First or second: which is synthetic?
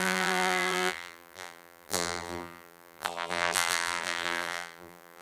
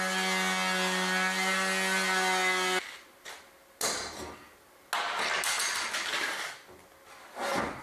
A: first